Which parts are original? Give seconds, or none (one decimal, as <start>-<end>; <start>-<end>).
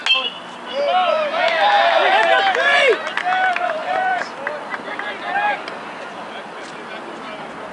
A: 0.0-3.8; 4.3-7.7